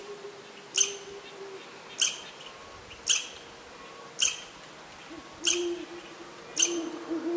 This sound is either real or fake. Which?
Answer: real